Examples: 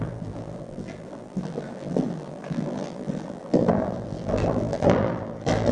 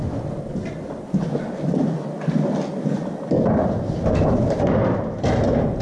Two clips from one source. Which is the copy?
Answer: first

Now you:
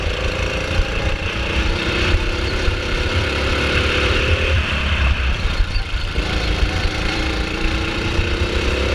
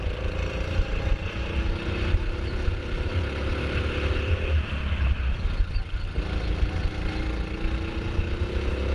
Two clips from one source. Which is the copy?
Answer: first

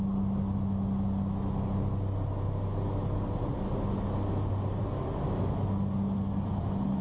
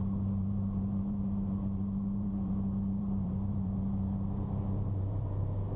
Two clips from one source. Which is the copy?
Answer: second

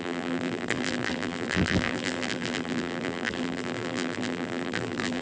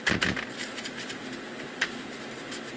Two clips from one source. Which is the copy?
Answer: first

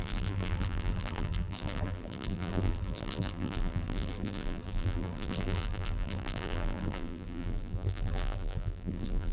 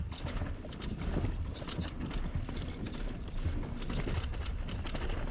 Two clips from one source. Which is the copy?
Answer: first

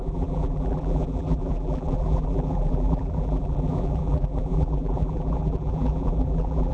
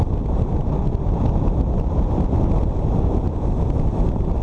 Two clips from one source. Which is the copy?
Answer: first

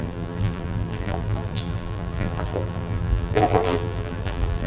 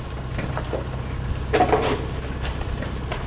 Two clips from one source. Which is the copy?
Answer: first